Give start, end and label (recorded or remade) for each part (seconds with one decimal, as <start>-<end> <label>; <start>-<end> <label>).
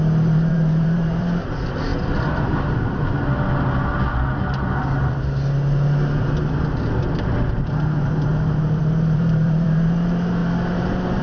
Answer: 0.0-1.9 remade; 1.9-7.2 recorded; 7.2-8.3 remade; 8.3-8.8 recorded; 8.8-11.2 remade